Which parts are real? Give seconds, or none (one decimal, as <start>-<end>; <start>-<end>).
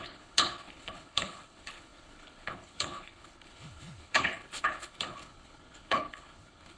none